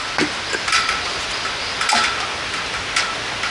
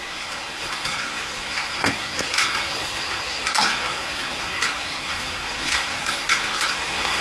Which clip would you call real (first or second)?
first